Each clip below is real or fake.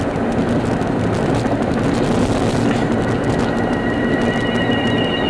real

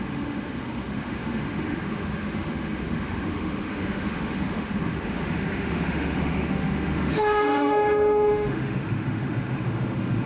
fake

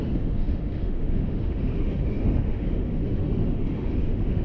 fake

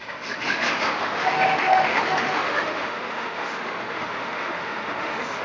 fake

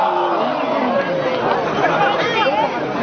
real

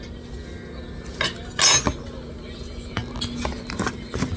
real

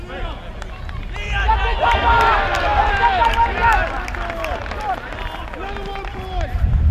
real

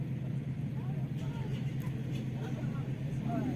real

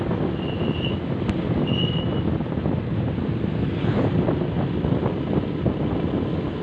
real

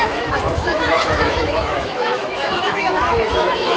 fake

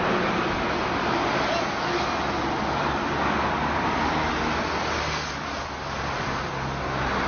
real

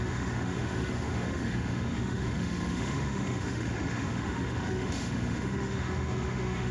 fake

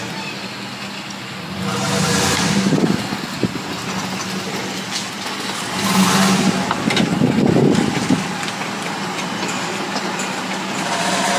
real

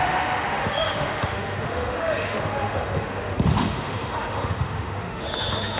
fake